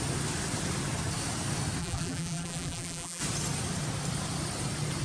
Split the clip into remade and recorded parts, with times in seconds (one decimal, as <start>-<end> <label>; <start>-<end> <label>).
0.0-1.8 recorded; 1.8-3.2 remade; 3.2-5.0 recorded